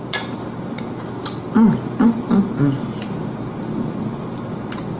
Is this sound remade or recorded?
recorded